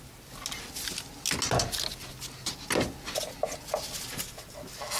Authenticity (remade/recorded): recorded